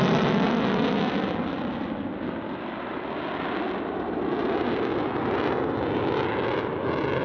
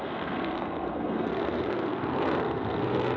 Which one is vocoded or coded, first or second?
second